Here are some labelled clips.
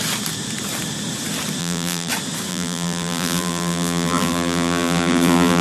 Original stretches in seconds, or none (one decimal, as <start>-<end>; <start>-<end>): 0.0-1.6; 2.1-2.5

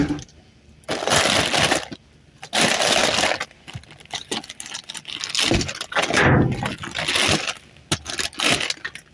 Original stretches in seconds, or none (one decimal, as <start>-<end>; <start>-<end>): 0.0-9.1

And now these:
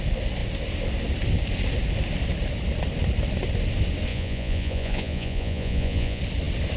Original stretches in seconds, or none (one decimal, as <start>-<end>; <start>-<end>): 0.0-4.1; 6.2-6.8